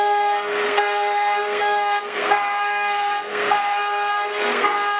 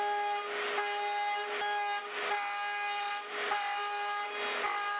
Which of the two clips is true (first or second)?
second